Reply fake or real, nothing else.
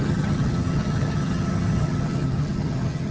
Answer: fake